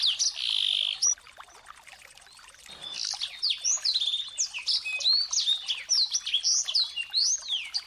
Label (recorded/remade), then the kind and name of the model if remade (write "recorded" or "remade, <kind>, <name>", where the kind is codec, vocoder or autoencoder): recorded